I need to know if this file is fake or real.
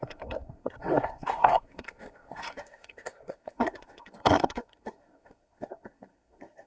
fake